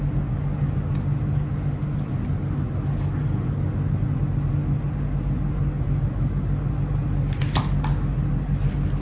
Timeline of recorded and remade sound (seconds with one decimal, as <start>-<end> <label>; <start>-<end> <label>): 0.0-9.0 recorded